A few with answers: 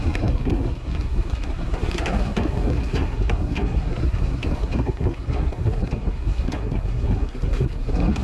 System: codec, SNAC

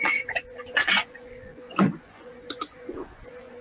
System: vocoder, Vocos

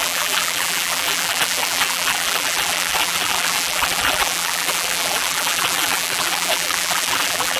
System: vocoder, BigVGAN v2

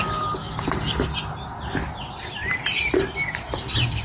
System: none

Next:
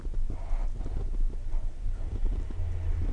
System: none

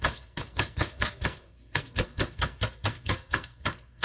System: codec, SNAC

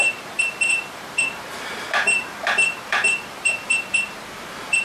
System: vocoder, BigVGAN v2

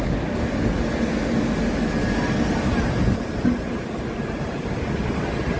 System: none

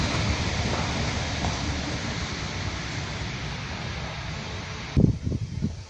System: none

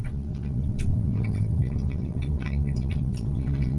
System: vocoder, WaveNeXt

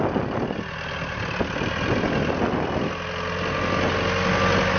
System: none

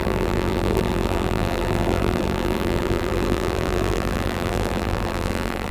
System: vocoder, BigVGAN v2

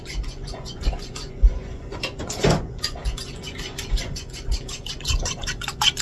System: vocoder, Vocos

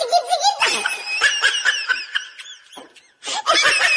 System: none